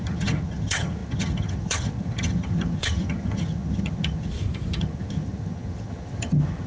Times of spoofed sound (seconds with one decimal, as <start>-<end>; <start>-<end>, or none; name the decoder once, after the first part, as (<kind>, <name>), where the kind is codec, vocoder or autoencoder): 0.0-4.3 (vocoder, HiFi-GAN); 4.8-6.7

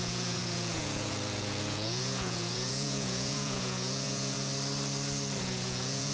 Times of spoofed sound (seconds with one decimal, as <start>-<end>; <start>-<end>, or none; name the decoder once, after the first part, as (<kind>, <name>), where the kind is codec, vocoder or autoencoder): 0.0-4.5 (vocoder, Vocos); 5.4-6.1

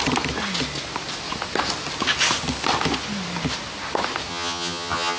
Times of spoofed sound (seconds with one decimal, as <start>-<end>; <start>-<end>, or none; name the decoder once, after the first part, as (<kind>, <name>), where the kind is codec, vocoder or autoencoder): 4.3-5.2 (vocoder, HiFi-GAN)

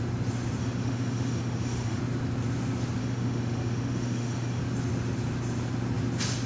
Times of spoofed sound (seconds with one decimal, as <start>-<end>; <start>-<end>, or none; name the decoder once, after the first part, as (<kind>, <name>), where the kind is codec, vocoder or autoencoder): 0.6-2.0 (autoencoder, DAC-VAE); 3.0-4.6

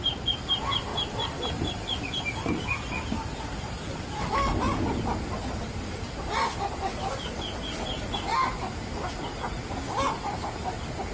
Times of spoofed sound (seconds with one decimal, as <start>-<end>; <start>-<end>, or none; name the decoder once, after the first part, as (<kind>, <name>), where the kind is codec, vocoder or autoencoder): 0.0-0.9 (vocoder, BigVGAN v2); 4.3-8.3; 9.1-11.1